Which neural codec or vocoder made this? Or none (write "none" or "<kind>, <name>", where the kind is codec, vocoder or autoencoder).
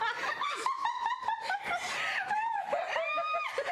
vocoder, BigVGAN v2